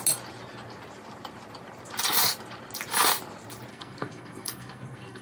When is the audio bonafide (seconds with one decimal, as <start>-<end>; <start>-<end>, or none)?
0.0-3.7